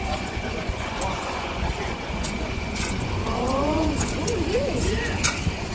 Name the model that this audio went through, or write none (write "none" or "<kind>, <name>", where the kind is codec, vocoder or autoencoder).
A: vocoder, Vocos